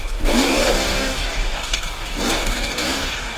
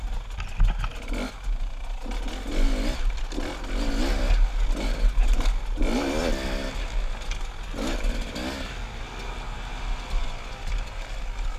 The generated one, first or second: first